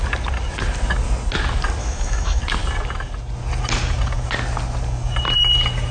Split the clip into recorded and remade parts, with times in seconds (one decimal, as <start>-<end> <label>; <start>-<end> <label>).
0.0-1.8 recorded; 1.8-2.4 remade; 2.4-5.9 recorded